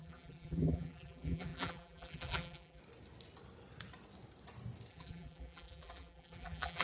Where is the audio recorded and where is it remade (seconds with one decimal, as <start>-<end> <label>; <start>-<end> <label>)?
0.0-2.8 remade; 2.8-4.9 recorded; 4.9-6.8 remade